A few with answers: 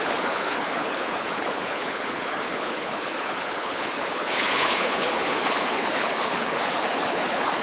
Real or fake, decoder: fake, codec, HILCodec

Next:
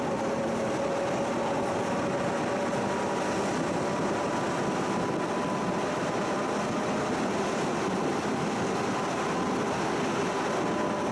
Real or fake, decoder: real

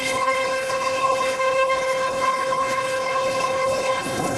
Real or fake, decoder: fake, codec, HILCodec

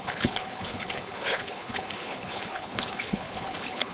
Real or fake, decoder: fake, codec, HILCodec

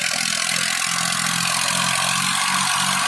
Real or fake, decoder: real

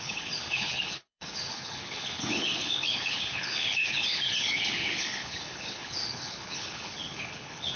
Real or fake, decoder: fake, codec, HILCodec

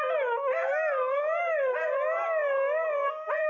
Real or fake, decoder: real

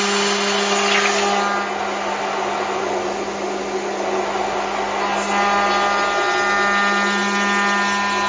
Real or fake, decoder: real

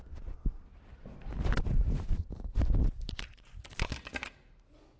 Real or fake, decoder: real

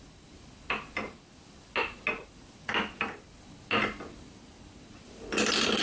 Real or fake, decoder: real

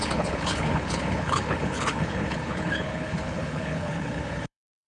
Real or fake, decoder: fake, codec, HILCodec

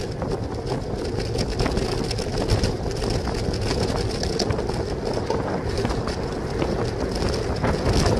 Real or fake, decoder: real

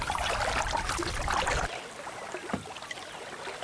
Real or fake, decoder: real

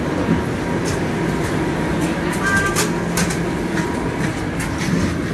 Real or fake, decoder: real